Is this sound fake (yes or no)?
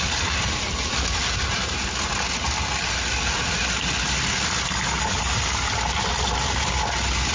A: no